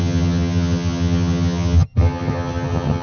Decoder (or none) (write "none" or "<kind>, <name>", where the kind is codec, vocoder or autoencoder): vocoder, HiFi-GAN